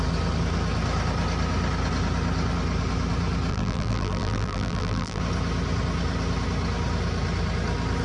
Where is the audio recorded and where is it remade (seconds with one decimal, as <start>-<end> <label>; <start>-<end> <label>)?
0.0-3.5 recorded; 3.5-5.2 remade; 5.2-8.0 recorded